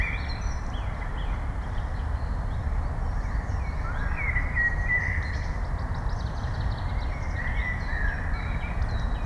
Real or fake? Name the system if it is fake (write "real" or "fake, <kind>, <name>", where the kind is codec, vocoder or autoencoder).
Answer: real